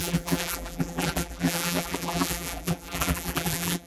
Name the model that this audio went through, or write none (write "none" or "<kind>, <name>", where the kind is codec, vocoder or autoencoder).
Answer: vocoder, BigVGAN v2